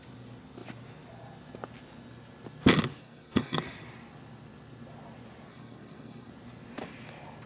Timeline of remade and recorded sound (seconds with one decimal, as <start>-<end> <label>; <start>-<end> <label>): 0.0-3.0 recorded; 3.0-3.6 remade; 3.6-5.5 recorded; 5.5-6.3 remade; 6.3-7.5 recorded